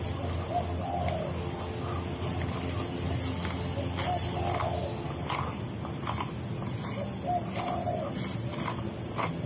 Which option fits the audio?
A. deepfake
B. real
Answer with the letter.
B